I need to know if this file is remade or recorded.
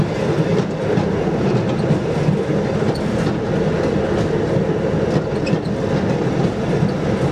recorded